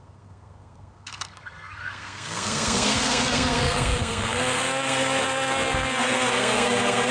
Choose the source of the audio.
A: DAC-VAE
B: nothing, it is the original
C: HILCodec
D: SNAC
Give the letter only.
D